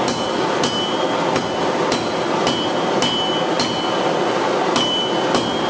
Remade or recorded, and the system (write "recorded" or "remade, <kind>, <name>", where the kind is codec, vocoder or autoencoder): recorded